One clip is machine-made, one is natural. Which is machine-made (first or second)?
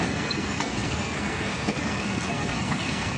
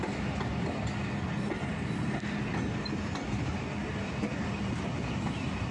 first